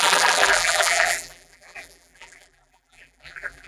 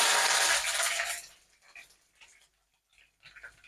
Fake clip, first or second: first